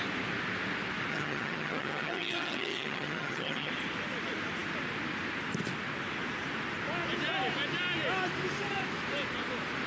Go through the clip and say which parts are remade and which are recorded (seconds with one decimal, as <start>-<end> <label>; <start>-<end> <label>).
0.0-1.1 recorded; 1.1-3.7 remade; 3.7-9.9 recorded